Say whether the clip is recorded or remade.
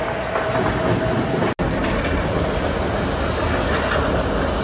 recorded